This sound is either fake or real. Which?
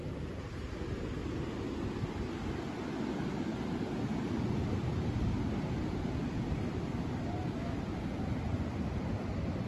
real